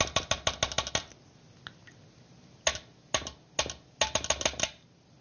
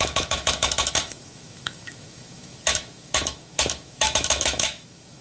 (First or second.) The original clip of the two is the first